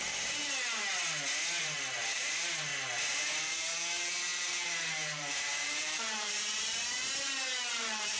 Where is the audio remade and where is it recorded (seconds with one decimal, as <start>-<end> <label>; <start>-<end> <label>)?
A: 0.0-0.4 remade; 0.4-1.6 recorded; 1.6-2.7 remade; 2.7-3.4 recorded; 3.4-8.2 remade